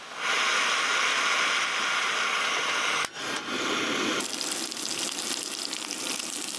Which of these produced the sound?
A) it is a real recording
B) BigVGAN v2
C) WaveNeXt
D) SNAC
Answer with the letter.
A